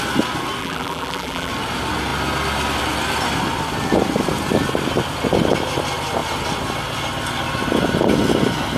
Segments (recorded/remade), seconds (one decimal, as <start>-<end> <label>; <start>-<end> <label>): 0.0-0.6 recorded; 0.6-1.5 remade; 1.5-8.8 recorded